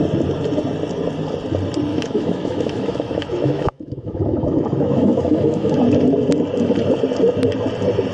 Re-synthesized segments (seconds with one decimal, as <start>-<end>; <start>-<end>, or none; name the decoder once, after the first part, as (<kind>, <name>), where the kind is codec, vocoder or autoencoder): 1.9-5.7 (autoencoder, DAC-VAE)